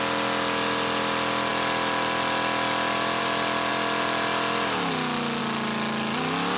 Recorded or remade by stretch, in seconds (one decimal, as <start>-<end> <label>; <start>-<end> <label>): 0.0-6.6 recorded

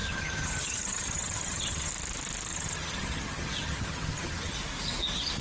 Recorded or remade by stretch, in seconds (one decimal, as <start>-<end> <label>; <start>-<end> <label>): 0.0-1.9 remade; 1.9-2.5 recorded; 2.5-4.5 remade; 4.5-5.4 recorded